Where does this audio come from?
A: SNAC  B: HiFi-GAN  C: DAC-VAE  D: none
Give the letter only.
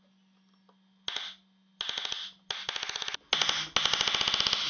D